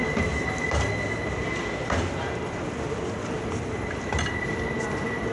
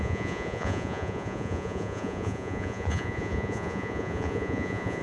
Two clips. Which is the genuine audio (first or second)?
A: first